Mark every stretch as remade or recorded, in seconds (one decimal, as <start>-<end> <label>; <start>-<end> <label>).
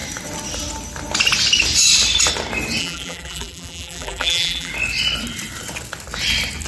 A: 0.0-2.8 recorded; 2.8-4.7 remade; 4.7-6.7 recorded